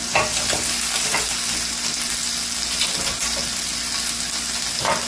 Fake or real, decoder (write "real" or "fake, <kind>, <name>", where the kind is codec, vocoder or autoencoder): real